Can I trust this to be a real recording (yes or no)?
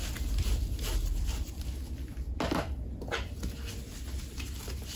yes